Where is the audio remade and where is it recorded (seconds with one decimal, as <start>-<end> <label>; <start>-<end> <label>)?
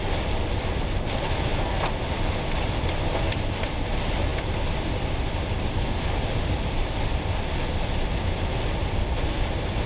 0.0-9.9 recorded